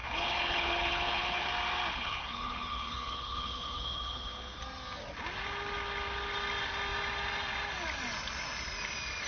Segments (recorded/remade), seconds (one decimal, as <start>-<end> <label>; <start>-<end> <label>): 0.0-1.5 remade; 1.5-1.9 recorded; 1.9-4.6 remade; 4.6-9.3 recorded

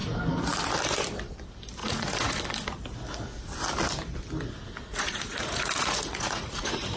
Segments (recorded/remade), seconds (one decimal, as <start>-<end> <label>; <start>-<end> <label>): 0.0-1.8 recorded; 1.8-2.4 remade; 2.4-4.9 recorded; 4.9-7.0 remade

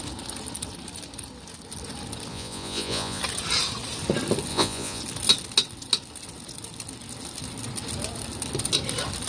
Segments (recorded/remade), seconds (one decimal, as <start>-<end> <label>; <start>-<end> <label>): 0.0-2.3 recorded; 2.3-3.2 remade; 3.2-4.5 recorded; 4.5-5.0 remade; 5.0-9.3 recorded

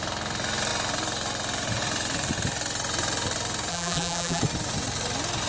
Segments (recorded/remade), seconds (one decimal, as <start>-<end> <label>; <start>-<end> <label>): 0.0-3.7 recorded; 3.7-4.4 remade; 4.4-5.5 recorded